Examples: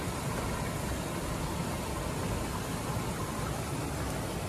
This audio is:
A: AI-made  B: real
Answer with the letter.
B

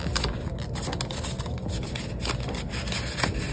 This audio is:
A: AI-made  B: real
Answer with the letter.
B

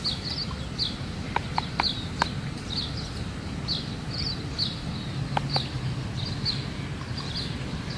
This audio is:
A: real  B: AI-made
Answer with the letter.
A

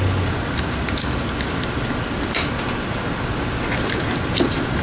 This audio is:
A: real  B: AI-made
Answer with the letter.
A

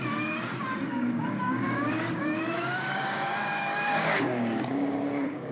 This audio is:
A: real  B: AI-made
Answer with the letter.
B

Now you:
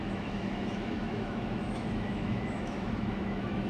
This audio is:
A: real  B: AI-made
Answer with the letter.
B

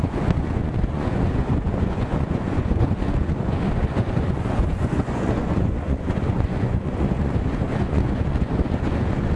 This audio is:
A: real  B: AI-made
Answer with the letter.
B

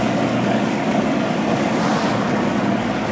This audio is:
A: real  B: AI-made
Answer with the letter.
B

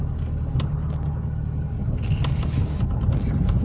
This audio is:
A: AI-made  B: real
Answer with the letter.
B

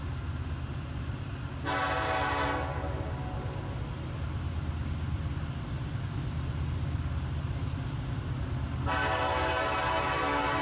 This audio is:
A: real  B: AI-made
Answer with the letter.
A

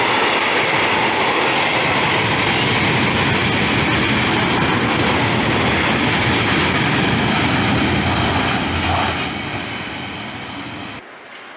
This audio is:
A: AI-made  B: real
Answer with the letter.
B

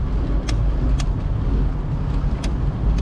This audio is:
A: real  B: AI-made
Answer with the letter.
A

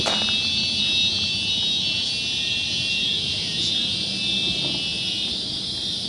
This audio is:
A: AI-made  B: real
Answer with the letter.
B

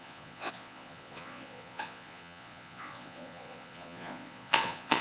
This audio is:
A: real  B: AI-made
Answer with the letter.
B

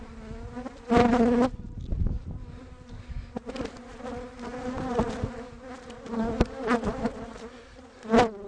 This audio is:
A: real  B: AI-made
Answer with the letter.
A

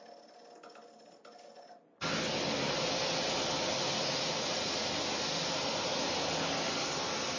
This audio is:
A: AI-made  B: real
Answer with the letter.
B